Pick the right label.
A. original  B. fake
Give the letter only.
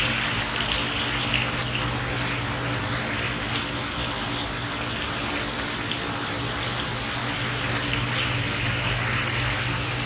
A